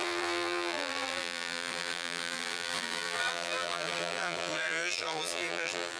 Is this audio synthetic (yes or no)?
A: yes